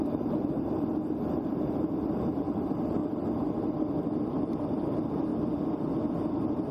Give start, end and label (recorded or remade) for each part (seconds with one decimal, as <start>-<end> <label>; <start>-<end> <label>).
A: 0.0-3.0 remade; 3.0-4.0 recorded; 4.0-5.3 remade; 5.3-6.3 recorded; 6.3-6.7 remade